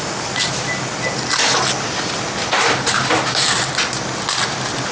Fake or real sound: real